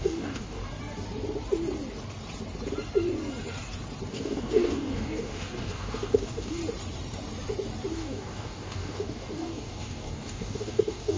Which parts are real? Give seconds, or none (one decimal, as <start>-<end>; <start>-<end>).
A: 0.6-4.1; 6.6-7.9

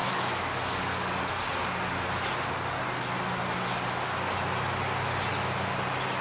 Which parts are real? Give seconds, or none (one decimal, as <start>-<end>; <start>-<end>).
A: 1.2-6.2

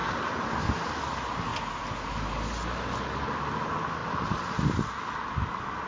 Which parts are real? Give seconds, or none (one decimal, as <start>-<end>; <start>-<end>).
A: 0.0-5.9

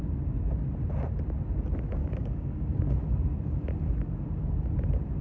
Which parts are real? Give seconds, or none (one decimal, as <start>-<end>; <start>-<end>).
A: 0.0-2.0; 2.7-5.2